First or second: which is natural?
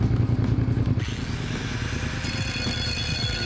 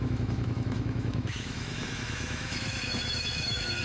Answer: first